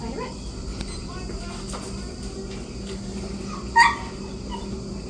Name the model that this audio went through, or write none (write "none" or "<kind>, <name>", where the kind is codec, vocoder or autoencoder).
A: none